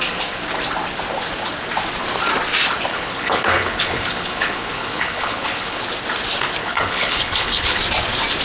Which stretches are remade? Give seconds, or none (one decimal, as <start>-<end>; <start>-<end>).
2.9-5.8; 6.6-7.8